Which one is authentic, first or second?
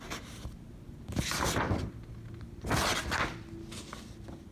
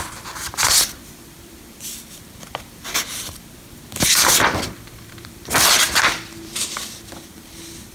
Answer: first